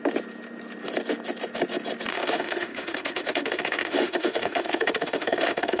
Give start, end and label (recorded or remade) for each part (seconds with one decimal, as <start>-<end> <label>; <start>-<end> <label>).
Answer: 0.0-2.1 recorded; 2.1-5.8 remade